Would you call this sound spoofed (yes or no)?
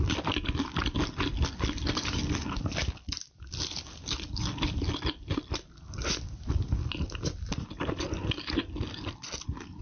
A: no